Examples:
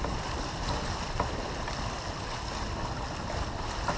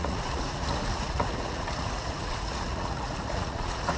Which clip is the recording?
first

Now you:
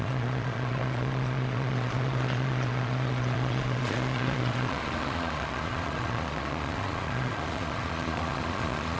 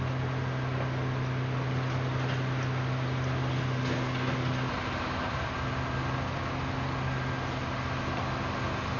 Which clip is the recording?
second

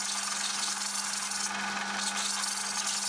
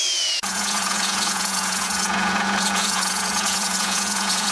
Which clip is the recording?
first